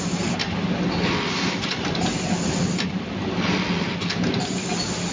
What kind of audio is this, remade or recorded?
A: recorded